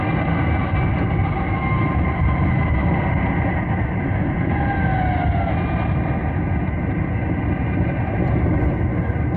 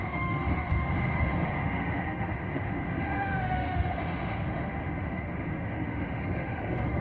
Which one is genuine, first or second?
first